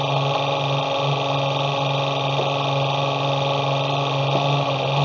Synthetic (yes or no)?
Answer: no